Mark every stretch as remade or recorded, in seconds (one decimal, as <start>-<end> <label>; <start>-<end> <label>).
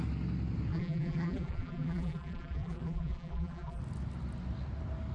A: 0.0-0.7 recorded; 0.7-3.8 remade; 3.8-5.1 recorded